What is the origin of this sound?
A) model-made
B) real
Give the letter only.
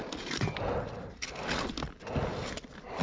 B